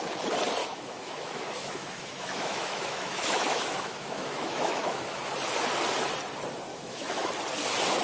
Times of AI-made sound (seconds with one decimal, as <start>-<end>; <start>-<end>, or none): 0.6-5.2; 6.7-7.3

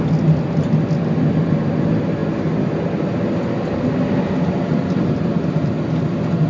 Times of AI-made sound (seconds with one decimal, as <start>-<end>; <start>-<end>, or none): none